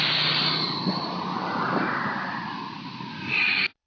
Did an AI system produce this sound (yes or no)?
no